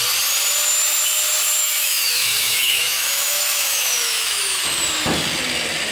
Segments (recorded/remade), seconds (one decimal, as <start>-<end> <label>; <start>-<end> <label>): 0.0-1.6 recorded; 1.6-4.6 remade; 4.6-5.9 recorded